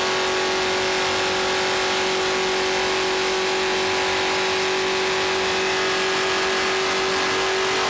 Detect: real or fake real